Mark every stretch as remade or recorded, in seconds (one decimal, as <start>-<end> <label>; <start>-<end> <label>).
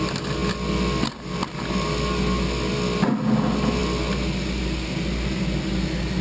0.0-6.2 recorded